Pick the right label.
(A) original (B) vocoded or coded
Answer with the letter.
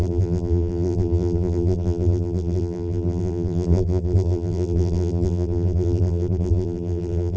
B